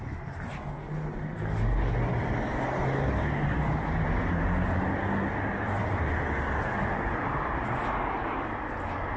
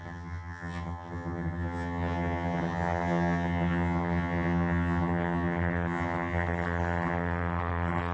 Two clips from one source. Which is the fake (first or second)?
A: second